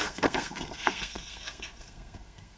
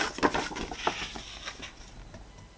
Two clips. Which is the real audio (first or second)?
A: second